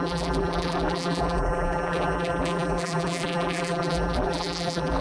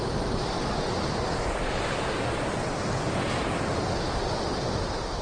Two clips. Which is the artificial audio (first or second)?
first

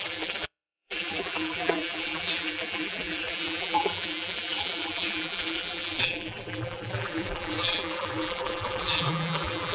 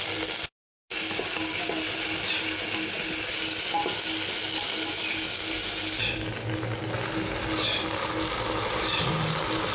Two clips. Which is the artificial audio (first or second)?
first